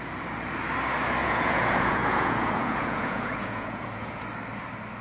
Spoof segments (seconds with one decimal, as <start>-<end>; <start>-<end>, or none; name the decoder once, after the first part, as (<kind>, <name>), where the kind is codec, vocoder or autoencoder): 1.2-4.2 (vocoder, Vocos)

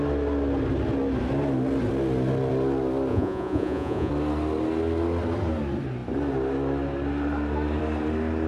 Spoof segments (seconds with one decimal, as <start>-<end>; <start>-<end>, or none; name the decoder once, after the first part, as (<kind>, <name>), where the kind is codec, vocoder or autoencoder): 3.1-4.1 (vocoder, Vocos)

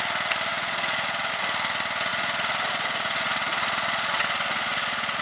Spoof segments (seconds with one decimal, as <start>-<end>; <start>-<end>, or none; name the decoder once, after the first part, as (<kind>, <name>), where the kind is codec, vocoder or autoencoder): 0.5-1.3 (vocoder, Vocos); 2.1-5.2

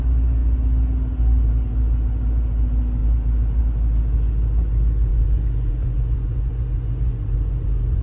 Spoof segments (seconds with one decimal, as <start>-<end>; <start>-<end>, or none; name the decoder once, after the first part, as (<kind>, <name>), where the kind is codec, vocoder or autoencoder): 5.1-8.0 (vocoder, Vocos)

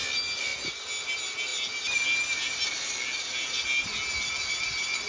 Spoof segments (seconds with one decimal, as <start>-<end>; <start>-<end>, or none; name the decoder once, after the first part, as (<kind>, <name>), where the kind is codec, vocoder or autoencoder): none

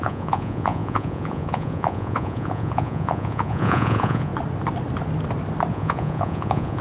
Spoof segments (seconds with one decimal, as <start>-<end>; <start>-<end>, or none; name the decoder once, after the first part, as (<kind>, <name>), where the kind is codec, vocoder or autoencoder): 0.0-4.3 (vocoder, Vocos); 5.7-6.8